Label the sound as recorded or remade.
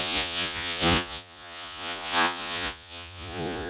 remade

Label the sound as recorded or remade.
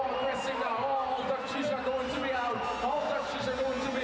recorded